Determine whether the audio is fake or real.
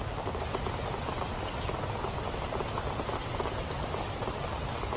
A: real